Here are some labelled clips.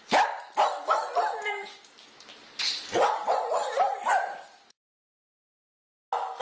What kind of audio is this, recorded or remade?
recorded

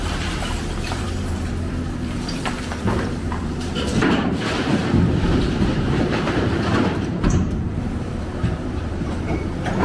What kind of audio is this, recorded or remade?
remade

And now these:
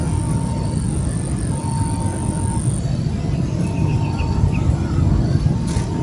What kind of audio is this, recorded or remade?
recorded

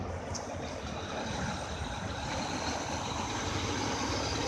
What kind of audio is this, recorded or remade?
recorded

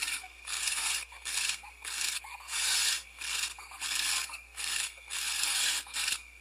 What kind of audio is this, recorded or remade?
remade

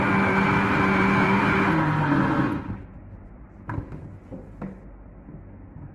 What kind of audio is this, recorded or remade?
recorded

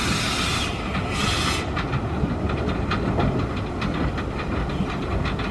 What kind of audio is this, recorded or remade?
recorded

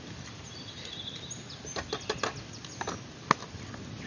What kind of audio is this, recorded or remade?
recorded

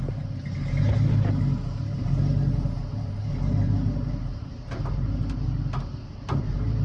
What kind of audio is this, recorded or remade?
recorded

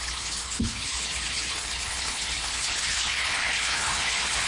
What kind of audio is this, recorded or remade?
remade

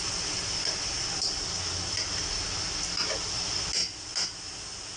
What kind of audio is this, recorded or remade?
recorded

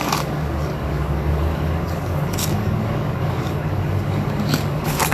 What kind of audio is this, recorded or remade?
remade